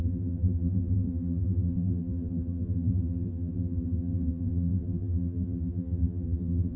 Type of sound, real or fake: fake